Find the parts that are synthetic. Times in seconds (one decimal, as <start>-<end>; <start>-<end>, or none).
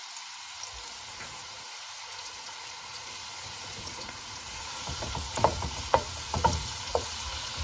1.0-7.6